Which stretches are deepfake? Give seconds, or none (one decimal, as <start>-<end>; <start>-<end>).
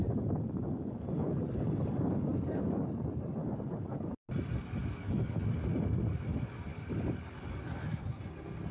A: 0.0-3.0; 3.4-4.1; 4.8-5.4; 6.7-7.6